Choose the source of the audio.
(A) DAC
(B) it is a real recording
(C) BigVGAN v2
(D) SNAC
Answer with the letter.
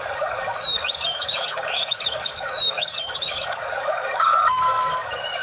A